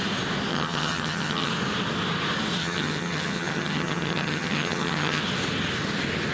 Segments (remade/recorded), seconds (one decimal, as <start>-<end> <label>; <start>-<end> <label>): 0.0-0.5 recorded; 0.5-1.5 remade; 1.5-2.6 recorded; 2.6-5.2 remade; 5.2-6.3 recorded